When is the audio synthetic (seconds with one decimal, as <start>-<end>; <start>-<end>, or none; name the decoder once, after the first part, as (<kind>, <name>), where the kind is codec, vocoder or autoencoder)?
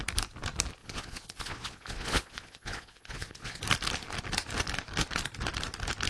0.8-3.6 (vocoder, Vocos)